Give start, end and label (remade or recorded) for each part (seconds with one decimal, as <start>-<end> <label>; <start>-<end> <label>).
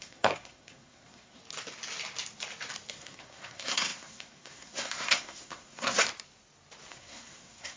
0.0-1.4 remade; 1.4-2.9 recorded; 2.9-6.0 remade; 6.0-6.9 recorded; 6.9-7.8 remade